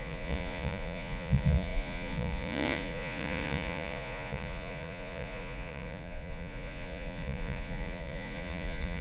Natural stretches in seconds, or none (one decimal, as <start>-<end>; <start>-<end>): none